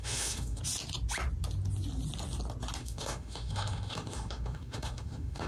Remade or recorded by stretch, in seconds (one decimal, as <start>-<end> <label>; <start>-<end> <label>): 0.0-0.6 remade; 0.6-2.8 recorded; 2.8-5.5 remade